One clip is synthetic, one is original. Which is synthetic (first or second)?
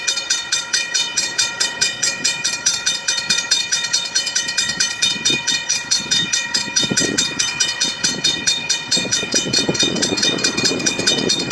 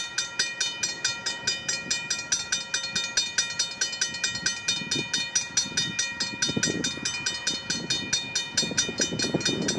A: first